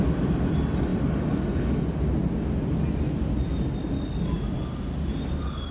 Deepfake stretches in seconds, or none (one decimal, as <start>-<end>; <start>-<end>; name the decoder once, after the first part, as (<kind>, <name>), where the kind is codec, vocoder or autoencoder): none